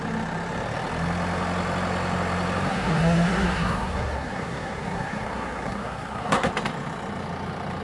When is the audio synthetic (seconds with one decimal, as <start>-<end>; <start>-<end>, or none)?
2.7-6.5